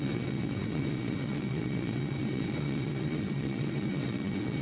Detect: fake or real fake